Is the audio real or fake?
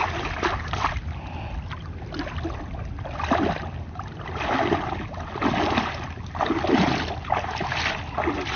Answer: real